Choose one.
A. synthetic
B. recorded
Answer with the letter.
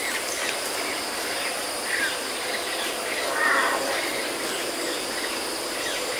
B